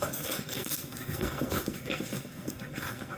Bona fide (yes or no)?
no